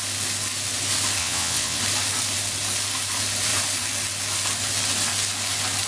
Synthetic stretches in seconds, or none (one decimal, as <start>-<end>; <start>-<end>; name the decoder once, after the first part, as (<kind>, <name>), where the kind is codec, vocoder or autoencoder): 1.2-1.8 (vocoder, WaveNeXt)